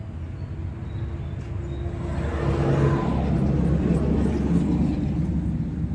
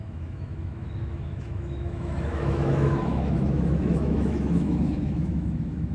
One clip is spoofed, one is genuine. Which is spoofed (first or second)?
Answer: second